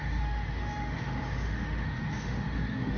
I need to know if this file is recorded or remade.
remade